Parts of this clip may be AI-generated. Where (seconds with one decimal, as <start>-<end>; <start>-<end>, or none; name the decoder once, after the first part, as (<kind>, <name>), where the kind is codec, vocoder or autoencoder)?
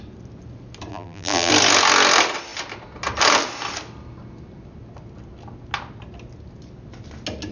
0.9-1.5 (vocoder, BigVGAN v2)